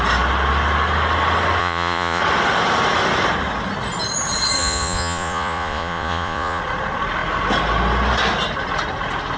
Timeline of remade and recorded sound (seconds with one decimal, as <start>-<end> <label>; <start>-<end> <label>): 0.0-1.6 recorded; 1.6-2.2 remade; 2.2-4.6 recorded; 4.6-6.6 remade; 6.6-9.4 recorded